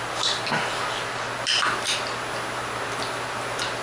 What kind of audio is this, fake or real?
real